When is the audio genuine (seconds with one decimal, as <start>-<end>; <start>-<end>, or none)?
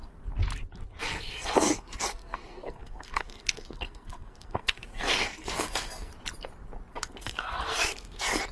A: 0.0-1.0; 6.1-6.9